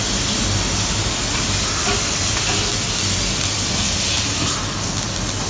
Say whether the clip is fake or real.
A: real